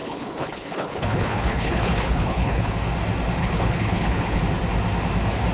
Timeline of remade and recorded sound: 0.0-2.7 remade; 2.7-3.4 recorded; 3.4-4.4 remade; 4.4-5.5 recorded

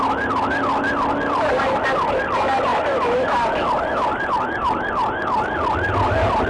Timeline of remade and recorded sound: 0.0-6.5 recorded

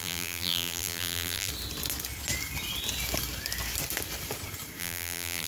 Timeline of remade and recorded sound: 0.0-1.5 remade; 1.5-4.8 recorded; 4.8-5.5 remade

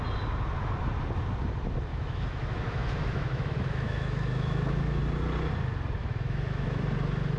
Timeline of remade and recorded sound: 0.0-1.9 recorded; 1.9-5.0 remade; 5.0-6.0 recorded; 6.0-6.8 remade; 6.8-7.4 recorded

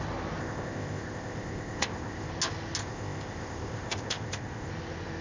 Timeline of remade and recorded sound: 0.0-0.4 recorded; 0.4-2.3 remade; 2.3-2.8 recorded; 2.8-4.7 remade; 4.7-5.2 recorded

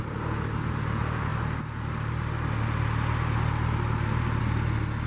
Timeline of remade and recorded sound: 0.0-5.1 recorded

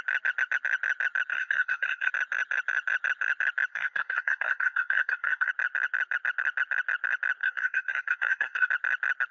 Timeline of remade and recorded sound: 0.0-1.3 recorded; 1.3-2.1 remade; 2.1-3.7 recorded; 3.7-5.5 remade; 5.5-7.4 recorded; 7.4-8.7 remade; 8.7-9.3 recorded

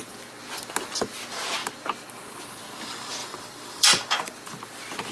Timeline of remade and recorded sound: 0.0-3.2 recorded; 3.2-4.6 remade; 4.6-5.1 recorded